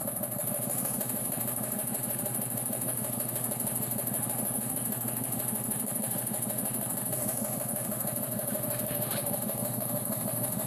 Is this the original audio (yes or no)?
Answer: no